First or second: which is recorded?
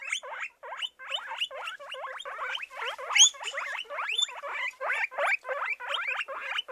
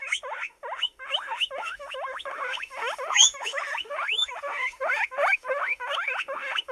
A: first